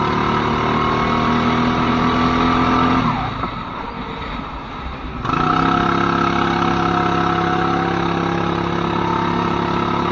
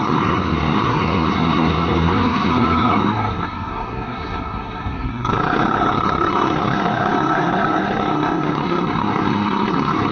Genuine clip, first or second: first